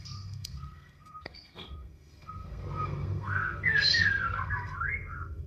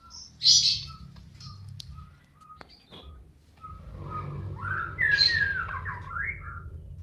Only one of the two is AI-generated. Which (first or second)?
first